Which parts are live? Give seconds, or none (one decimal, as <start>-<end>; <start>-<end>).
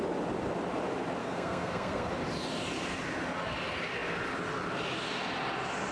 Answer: 0.0-1.2; 2.1-5.9